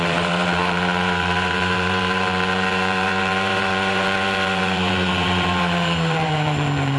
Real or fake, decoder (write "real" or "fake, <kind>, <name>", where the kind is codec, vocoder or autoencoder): fake, vocoder, BigVGAN v2